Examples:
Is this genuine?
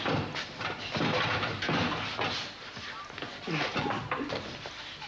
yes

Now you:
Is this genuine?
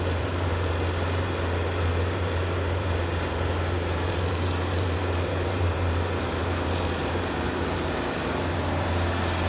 no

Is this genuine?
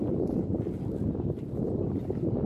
yes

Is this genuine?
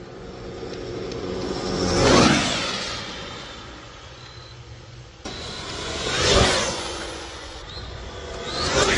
no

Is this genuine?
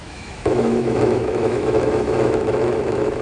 no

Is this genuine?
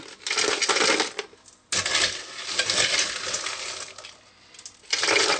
yes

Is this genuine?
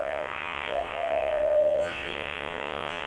no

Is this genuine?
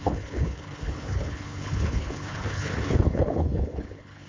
no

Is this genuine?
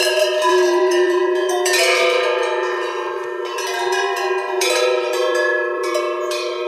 no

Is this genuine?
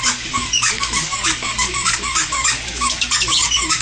no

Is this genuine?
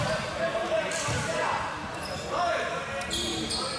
yes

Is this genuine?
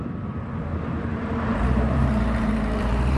no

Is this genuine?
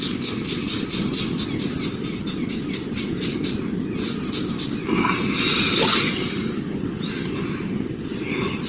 yes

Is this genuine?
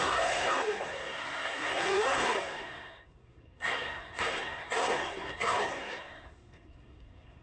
no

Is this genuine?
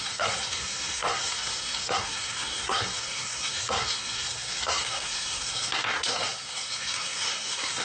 no